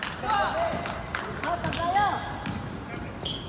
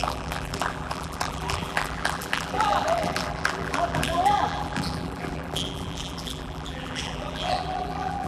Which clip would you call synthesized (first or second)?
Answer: second